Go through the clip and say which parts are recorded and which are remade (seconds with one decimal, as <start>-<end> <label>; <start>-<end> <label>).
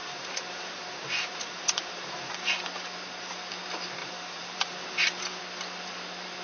0.0-2.6 remade; 2.6-4.0 recorded; 4.0-5.4 remade; 5.4-6.4 recorded